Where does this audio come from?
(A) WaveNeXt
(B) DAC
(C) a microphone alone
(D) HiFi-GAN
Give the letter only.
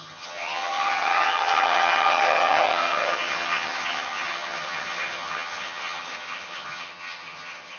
D